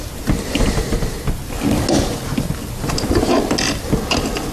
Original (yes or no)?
yes